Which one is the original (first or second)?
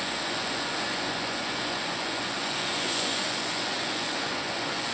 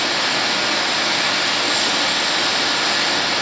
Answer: second